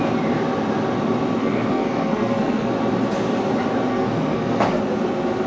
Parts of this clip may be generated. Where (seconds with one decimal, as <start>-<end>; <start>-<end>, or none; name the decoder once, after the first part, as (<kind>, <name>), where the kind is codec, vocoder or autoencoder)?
1.4-2.7 (codec, SNAC); 3.9-4.8